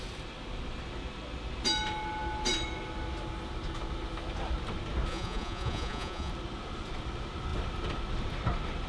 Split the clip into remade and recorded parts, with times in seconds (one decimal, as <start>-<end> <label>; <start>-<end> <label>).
0.0-5.1 recorded; 5.1-6.3 remade; 6.3-8.9 recorded